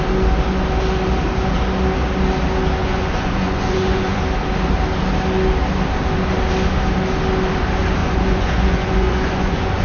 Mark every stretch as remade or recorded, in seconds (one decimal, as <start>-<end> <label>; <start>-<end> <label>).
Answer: 0.0-2.8 recorded; 2.8-4.2 remade; 4.2-8.0 recorded; 8.0-9.8 remade

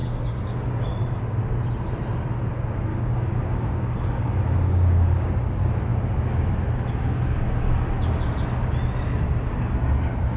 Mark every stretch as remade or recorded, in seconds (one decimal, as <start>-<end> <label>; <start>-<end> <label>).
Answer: 0.0-0.9 remade; 0.9-2.9 recorded; 2.9-5.3 remade; 5.3-10.4 recorded

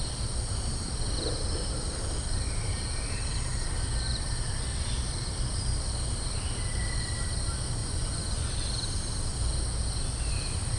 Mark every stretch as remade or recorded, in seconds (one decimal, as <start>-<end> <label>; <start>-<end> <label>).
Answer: 0.0-7.8 recorded; 7.8-8.5 remade; 8.5-10.8 recorded

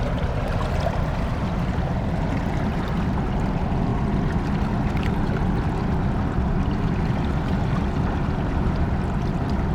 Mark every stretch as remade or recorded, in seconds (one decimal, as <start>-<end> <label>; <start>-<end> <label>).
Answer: 0.0-9.7 recorded

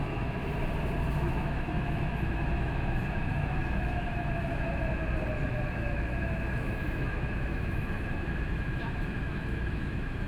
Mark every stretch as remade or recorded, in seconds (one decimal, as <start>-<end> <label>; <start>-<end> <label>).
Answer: 0.0-0.4 remade; 0.4-1.1 recorded; 1.1-4.7 remade; 4.7-5.7 recorded; 5.7-10.3 remade

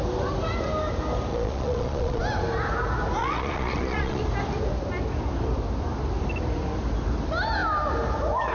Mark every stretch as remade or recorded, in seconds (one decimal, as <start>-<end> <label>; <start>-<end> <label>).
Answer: 0.0-1.3 recorded; 1.3-2.2 remade; 2.2-3.2 recorded; 3.2-4.2 remade; 4.2-8.5 recorded

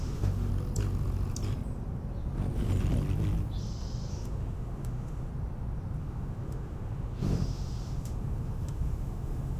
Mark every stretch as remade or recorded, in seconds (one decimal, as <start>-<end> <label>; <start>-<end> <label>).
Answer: 0.0-0.5 remade; 0.5-4.1 recorded; 4.1-5.3 remade; 5.3-6.0 recorded; 6.0-9.6 remade